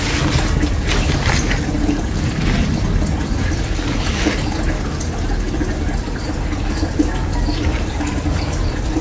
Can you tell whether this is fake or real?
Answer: real